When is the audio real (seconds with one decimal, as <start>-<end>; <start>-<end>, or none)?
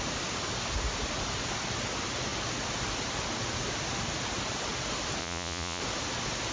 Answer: 0.0-5.2; 5.8-6.5